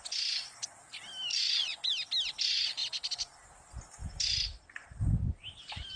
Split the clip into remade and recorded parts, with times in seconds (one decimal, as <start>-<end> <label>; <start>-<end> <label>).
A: 0.0-1.3 recorded; 1.3-1.9 remade; 1.9-6.0 recorded